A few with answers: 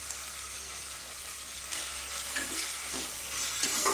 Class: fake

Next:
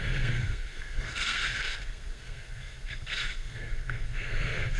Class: fake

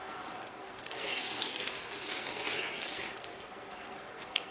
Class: fake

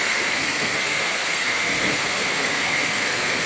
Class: fake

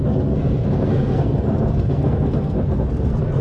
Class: fake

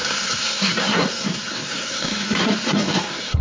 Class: fake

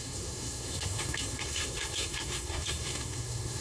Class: fake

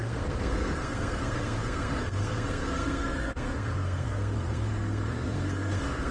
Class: fake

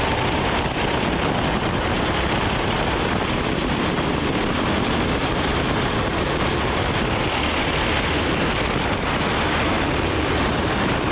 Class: real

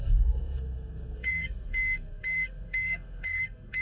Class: fake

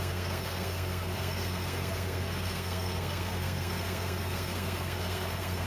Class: fake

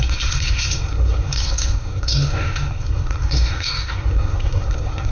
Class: fake